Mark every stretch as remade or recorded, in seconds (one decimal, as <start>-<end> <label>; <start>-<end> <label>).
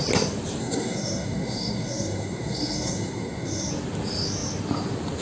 0.0-0.6 recorded; 0.6-3.7 remade; 3.7-5.2 recorded